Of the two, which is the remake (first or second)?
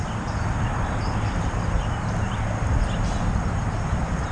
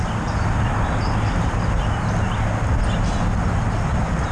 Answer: first